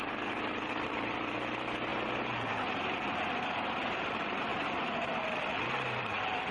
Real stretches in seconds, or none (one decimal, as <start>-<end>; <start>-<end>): 1.9-3.9; 4.5-6.0